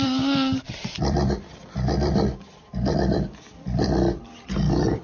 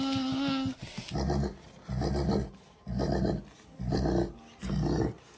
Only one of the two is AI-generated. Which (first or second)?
first